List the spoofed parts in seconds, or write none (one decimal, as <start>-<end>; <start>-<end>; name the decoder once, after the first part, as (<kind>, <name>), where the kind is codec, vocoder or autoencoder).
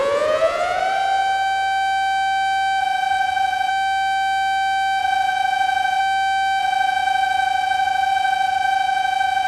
0.0-0.8 (vocoder, Vocos); 2.8-3.7; 5.0-6.0; 6.6-9.5